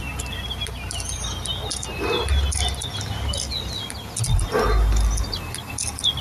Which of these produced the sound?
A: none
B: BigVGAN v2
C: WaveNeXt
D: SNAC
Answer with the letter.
A